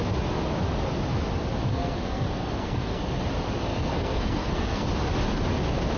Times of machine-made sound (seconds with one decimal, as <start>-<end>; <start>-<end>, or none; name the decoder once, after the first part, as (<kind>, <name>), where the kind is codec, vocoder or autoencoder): 1.7-3.0 (codec, SNAC); 3.7-4.9